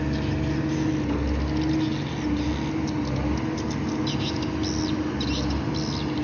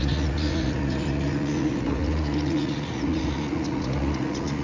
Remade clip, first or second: second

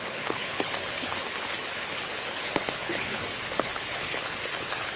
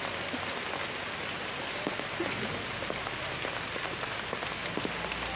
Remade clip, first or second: first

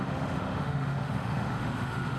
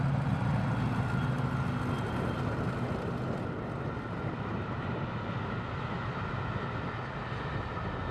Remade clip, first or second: first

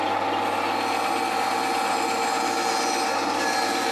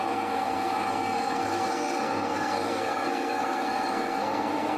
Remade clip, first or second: second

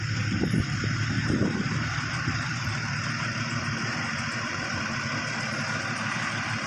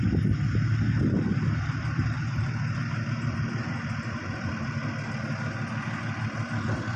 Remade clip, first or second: first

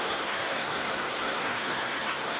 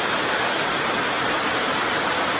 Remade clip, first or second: first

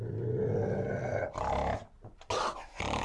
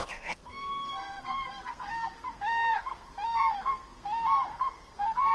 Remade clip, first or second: second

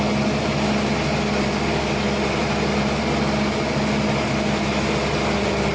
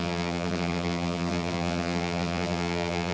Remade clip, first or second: second